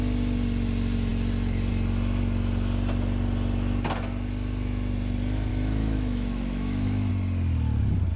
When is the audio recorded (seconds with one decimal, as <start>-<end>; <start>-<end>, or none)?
0.0-5.5; 7.1-8.2